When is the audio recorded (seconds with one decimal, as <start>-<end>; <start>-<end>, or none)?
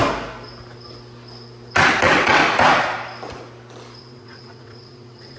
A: 0.0-2.0; 2.4-4.0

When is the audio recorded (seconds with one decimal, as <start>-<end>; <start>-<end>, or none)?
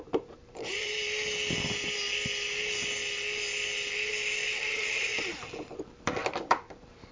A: 1.0-4.5; 5.1-5.8